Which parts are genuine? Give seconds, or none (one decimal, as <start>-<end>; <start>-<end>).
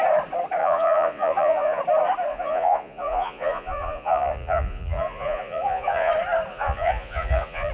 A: 0.0-0.6; 1.8-2.3; 6.1-6.5